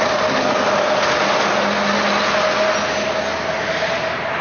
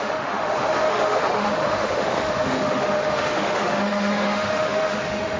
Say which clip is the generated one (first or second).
second